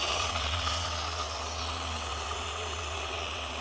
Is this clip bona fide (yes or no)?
no